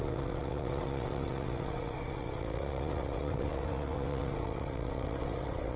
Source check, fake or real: fake